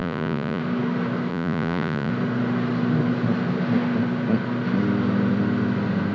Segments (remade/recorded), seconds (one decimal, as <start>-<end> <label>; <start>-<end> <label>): 0.0-0.6 remade; 0.6-1.3 recorded; 1.3-2.1 remade; 2.1-6.1 recorded